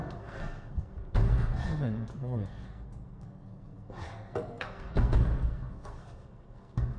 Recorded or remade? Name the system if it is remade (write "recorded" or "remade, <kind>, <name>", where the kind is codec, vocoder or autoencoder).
remade, codec, SNAC